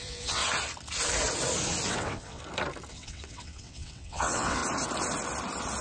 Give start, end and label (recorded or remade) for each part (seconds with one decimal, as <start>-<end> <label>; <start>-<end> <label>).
0.0-0.4 remade; 0.4-1.9 recorded; 1.9-2.4 remade; 2.4-2.9 recorded; 2.9-4.6 remade; 4.6-5.8 recorded